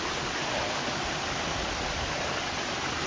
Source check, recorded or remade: recorded